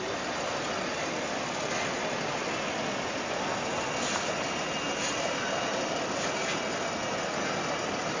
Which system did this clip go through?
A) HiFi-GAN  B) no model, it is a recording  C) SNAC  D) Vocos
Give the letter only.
B